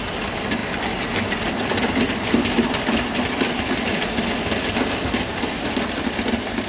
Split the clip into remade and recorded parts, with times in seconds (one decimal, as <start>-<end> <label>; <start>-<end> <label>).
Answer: 0.0-6.7 recorded